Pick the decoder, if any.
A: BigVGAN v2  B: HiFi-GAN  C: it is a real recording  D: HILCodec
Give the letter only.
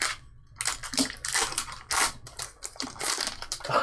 C